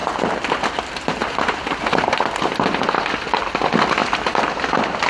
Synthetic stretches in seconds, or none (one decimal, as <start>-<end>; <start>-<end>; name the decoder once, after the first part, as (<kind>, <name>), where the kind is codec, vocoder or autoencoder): 4.0-5.1 (vocoder, BigVGAN v2)